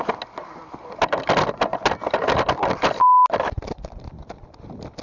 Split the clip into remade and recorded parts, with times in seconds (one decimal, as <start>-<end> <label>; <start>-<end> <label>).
0.0-5.0 recorded